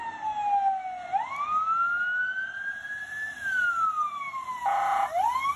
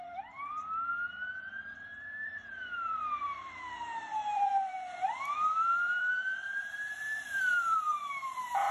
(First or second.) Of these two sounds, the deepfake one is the second